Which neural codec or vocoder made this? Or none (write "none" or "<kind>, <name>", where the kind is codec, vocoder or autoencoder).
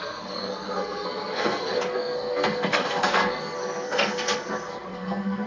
codec, SNAC